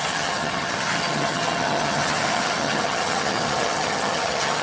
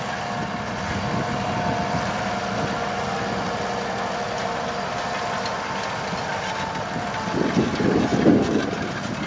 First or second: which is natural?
second